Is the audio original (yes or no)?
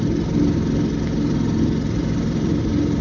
yes